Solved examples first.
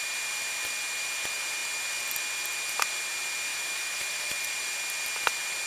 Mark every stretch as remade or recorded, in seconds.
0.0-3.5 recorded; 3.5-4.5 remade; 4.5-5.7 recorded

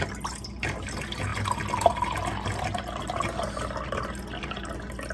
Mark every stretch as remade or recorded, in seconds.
0.0-5.1 recorded

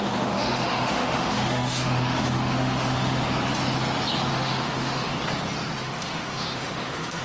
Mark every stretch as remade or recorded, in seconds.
0.0-3.2 remade; 3.2-4.3 recorded; 4.3-5.1 remade; 5.1-5.8 recorded; 5.8-7.2 remade